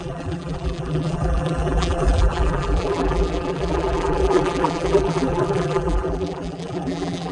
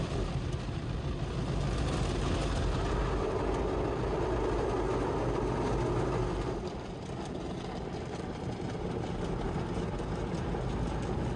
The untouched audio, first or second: second